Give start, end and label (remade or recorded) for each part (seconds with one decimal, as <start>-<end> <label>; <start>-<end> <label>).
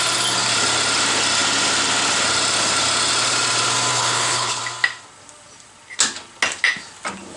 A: 0.0-3.9 recorded; 3.9-4.6 remade; 4.6-7.4 recorded